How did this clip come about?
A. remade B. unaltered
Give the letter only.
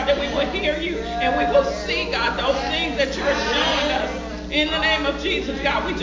B